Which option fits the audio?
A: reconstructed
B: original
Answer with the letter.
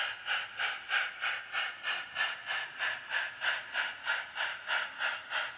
B